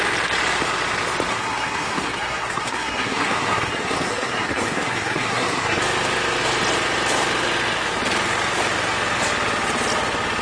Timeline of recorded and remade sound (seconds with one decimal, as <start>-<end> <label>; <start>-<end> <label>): 0.0-1.3 recorded; 1.3-5.8 remade; 5.8-10.4 recorded